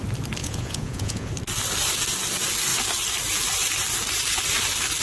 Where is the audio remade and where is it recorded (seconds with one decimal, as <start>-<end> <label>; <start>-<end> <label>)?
0.0-0.4 recorded; 0.4-1.3 remade; 1.3-5.0 recorded

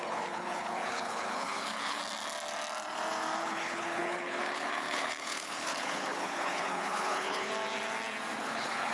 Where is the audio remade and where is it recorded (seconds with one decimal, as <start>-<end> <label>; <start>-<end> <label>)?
0.0-2.0 remade; 2.0-3.4 recorded; 3.4-7.5 remade; 7.5-8.4 recorded; 8.4-8.9 remade